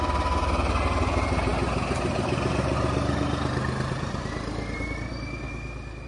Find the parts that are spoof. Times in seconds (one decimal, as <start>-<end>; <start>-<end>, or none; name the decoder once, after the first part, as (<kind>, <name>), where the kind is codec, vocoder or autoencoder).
none